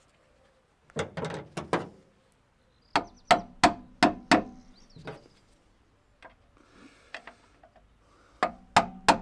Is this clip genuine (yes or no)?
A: yes